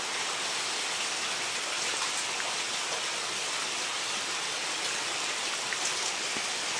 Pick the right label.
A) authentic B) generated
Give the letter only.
A